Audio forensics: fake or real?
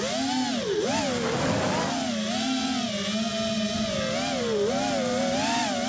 real